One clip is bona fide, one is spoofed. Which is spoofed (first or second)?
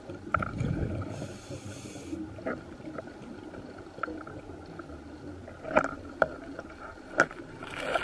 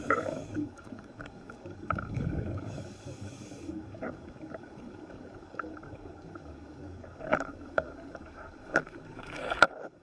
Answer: second